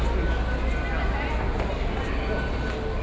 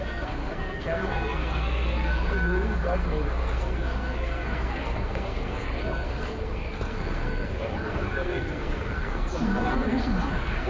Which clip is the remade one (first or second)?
second